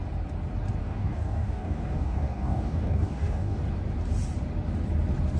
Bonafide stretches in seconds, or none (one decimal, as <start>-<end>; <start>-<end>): 0.0-0.8; 3.6-5.4